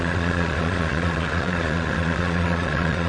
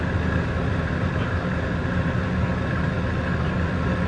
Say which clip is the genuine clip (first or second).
second